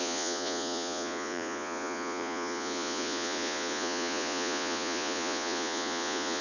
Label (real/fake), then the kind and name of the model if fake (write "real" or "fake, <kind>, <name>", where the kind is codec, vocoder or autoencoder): fake, vocoder, Vocos